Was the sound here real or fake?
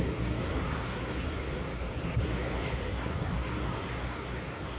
fake